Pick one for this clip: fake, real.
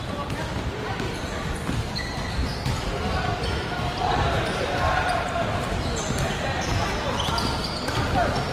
real